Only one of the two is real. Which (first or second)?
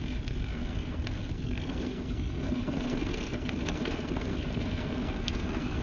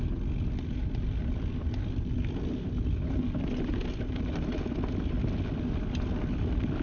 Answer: second